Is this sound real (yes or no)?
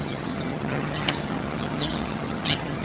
no